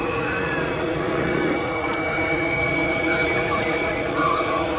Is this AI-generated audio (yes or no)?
yes